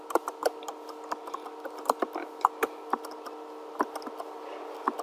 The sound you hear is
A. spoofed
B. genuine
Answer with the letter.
B